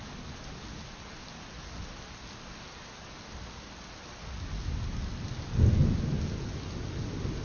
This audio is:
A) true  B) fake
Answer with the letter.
A